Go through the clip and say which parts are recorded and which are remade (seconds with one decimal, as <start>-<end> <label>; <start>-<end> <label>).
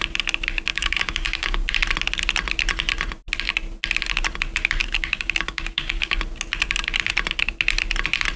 0.0-0.7 recorded; 0.7-1.7 remade; 1.7-4.8 recorded; 4.8-6.2 remade; 6.2-8.4 recorded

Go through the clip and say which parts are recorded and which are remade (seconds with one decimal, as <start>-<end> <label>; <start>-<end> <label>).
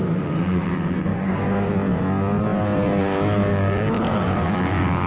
0.0-1.1 recorded; 1.1-1.7 remade; 1.7-3.5 recorded; 3.5-5.1 remade